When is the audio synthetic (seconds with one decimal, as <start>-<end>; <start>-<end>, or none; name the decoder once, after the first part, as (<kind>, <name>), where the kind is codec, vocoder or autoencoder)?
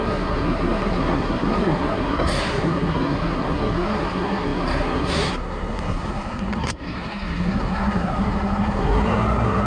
0.0-9.7 (codec, SNAC)